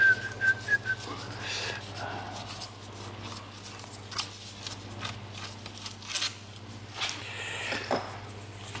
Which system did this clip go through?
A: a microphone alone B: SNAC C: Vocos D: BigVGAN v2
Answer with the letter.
A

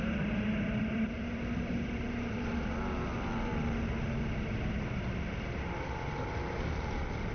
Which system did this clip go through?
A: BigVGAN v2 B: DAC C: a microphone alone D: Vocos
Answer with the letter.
C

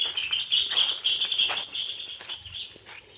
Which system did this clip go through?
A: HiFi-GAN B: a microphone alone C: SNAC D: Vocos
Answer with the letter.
B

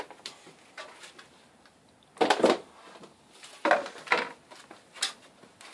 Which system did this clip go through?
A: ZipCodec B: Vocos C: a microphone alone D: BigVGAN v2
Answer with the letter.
C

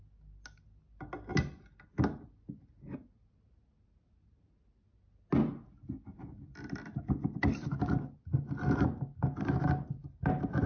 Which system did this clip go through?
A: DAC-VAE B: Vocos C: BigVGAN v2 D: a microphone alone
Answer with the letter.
D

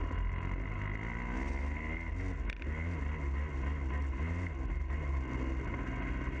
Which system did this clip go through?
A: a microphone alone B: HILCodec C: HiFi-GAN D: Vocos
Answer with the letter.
A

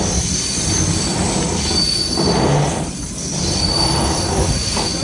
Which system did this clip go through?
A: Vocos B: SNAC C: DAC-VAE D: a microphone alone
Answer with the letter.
D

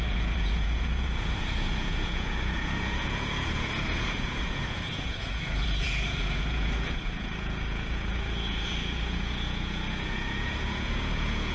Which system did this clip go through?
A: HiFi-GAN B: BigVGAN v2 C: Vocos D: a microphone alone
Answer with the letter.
C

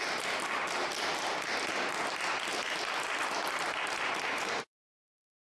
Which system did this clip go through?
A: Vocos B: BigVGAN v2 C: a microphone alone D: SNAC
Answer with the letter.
C